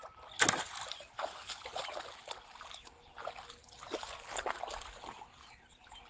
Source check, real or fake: real